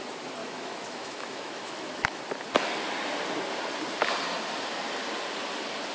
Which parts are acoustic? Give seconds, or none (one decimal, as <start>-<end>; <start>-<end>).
0.0-0.4; 2.2-5.9